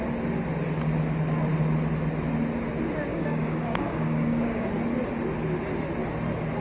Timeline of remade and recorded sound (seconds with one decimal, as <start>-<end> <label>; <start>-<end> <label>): 0.0-3.1 recorded; 3.1-4.7 remade; 4.7-6.6 recorded